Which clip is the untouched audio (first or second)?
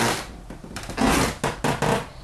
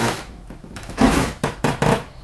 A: first